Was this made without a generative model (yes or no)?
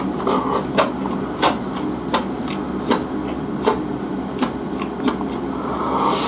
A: yes